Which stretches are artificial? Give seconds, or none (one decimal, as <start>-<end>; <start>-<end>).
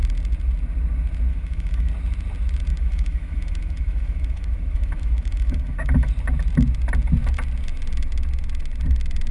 1.3-1.9; 2.7-6.1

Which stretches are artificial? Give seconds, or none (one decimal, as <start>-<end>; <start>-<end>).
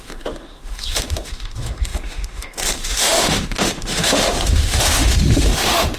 0.0-6.0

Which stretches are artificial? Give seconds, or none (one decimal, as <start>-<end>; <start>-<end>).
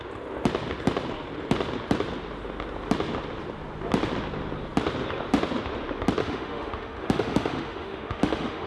6.2-8.7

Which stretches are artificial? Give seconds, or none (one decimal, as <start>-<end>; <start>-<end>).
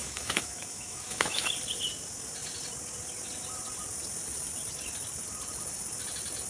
0.0-1.5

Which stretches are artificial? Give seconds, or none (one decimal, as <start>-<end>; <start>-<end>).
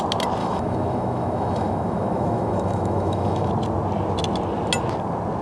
0.4-3.5